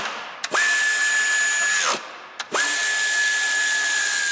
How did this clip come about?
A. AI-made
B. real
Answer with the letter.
B